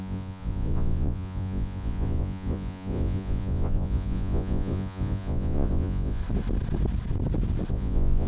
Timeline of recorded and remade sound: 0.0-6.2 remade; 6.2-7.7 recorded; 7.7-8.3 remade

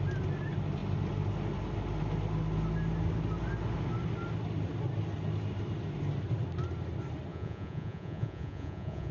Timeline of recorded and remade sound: 0.0-7.3 recorded; 7.3-9.1 remade

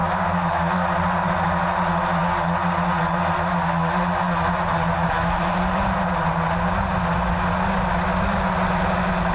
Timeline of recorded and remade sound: 0.0-9.3 recorded

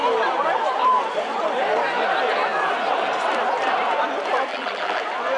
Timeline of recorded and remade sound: 0.0-4.5 recorded; 4.5-5.0 remade; 5.0-5.4 recorded